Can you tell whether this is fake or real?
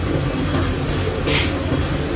real